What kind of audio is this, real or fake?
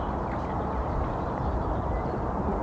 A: fake